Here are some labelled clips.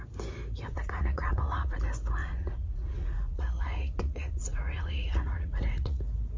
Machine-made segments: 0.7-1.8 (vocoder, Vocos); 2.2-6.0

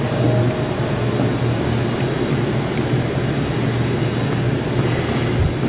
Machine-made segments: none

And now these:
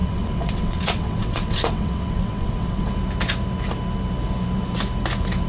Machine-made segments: 0.0-2.9 (vocoder, WaveNeXt)

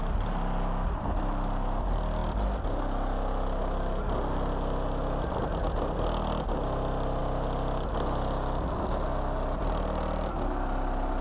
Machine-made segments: none

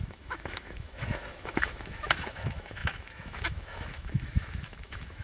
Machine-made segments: 0.0-5.2 (autoencoder, DAC-VAE)